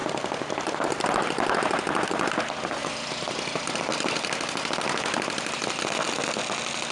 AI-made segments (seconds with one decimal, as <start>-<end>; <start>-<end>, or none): 0.0-1.0; 2.8-6.9